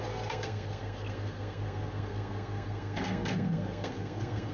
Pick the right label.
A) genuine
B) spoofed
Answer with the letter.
B